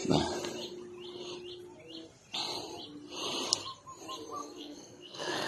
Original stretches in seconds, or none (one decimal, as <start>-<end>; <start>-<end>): 0.0-4.4